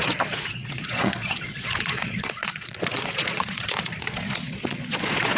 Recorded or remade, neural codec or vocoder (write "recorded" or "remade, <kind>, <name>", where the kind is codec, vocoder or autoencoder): remade, vocoder, Vocos